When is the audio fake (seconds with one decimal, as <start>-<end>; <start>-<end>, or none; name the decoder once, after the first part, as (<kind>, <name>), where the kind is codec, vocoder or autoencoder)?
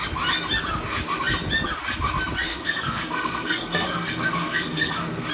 2.5-5.3 (codec, SNAC)